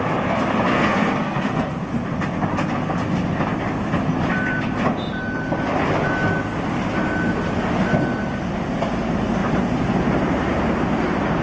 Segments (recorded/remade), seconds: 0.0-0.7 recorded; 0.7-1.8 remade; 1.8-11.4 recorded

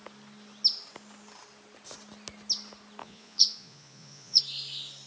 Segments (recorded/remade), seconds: 0.0-3.0 recorded; 3.0-4.4 remade; 4.4-5.1 recorded

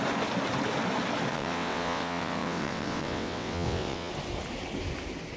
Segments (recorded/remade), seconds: 0.0-1.3 recorded; 1.3-4.1 remade; 4.1-5.4 recorded

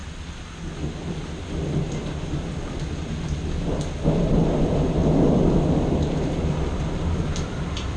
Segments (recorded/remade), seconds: 0.0-4.2 recorded; 4.2-5.0 remade; 5.0-6.1 recorded; 6.1-8.0 remade

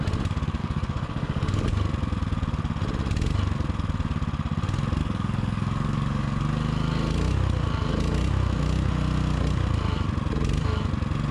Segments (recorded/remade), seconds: 0.0-0.6 recorded; 0.6-1.7 remade; 1.7-5.0 recorded; 5.0-6.4 remade; 6.4-11.3 recorded

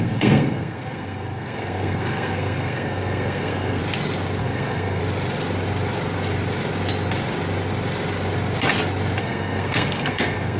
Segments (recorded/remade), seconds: 0.0-3.8 remade; 3.8-4.4 recorded; 4.4-5.0 remade; 5.0-9.2 recorded; 9.2-10.6 remade

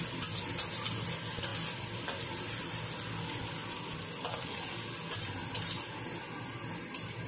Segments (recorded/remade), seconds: 0.0-7.3 recorded